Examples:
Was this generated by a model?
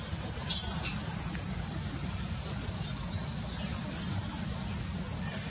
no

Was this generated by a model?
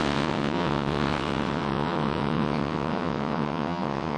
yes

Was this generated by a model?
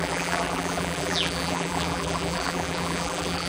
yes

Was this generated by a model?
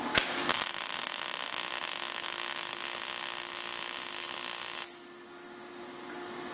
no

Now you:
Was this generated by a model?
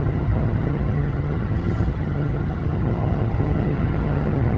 yes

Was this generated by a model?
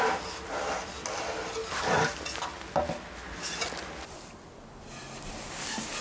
no